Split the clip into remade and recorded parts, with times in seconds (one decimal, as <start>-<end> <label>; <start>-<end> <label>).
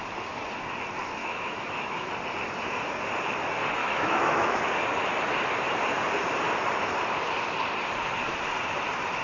0.0-1.2 recorded; 1.2-2.1 remade; 2.1-3.8 recorded; 3.8-4.6 remade; 4.6-9.2 recorded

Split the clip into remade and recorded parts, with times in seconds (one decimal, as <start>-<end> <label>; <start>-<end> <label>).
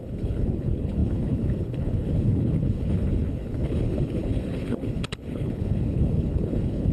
0.0-6.9 remade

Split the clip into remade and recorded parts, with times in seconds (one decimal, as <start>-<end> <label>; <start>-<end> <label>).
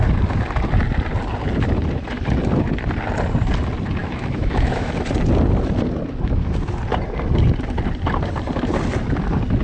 0.0-4.0 recorded; 4.0-4.9 remade; 4.9-9.6 recorded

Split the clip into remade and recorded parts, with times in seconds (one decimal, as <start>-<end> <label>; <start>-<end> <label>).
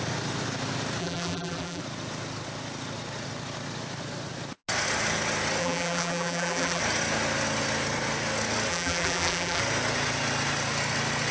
0.0-1.0 recorded; 1.0-1.8 remade; 1.8-5.6 recorded; 5.6-6.8 remade; 6.8-8.7 recorded; 8.7-9.6 remade; 9.6-11.3 recorded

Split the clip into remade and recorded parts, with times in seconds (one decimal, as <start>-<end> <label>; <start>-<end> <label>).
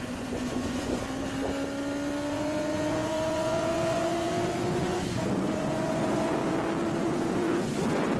0.0-1.0 remade; 1.0-2.3 recorded; 2.3-6.4 remade; 6.4-7.0 recorded; 7.0-8.2 remade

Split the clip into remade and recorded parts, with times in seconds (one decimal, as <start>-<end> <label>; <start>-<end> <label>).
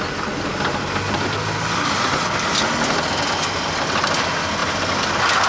0.0-5.5 recorded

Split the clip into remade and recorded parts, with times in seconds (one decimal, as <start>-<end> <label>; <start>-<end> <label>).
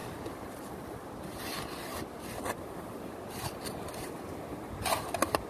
0.0-5.5 recorded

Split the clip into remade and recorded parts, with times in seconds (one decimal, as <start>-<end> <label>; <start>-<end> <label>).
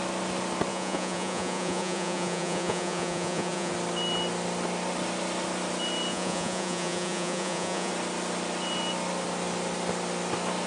0.0-0.7 recorded; 0.7-3.7 remade; 3.7-6.1 recorded; 6.1-7.9 remade; 7.9-10.7 recorded